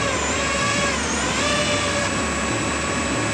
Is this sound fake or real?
real